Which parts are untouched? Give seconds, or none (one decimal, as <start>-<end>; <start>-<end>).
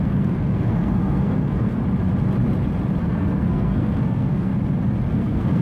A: 1.8-3.0; 4.5-5.1